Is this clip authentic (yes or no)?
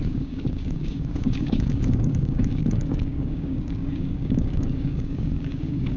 no